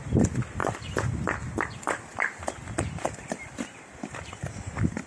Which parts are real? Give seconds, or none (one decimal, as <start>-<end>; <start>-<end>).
0.0-5.1